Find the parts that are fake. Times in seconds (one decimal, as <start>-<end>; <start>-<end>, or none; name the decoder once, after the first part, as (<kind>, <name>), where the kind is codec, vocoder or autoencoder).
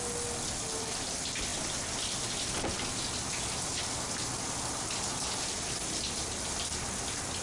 none